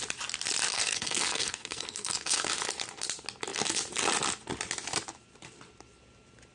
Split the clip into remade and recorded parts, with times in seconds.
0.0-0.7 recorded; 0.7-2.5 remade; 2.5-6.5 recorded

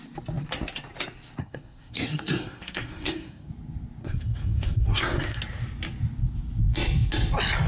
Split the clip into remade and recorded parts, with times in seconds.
0.0-1.4 recorded; 1.4-3.5 remade; 3.5-4.0 recorded; 4.0-5.4 remade; 5.4-7.7 recorded

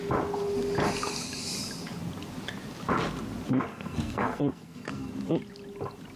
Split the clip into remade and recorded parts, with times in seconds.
0.0-3.7 recorded; 3.7-5.1 remade; 5.1-6.2 recorded

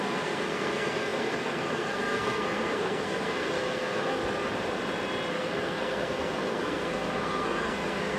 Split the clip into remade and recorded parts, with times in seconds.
0.0-4.2 remade; 4.2-5.3 recorded; 5.3-8.2 remade

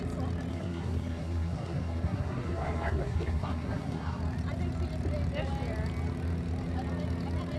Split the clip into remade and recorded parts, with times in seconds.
0.0-0.5 recorded; 0.5-4.2 remade; 4.2-7.6 recorded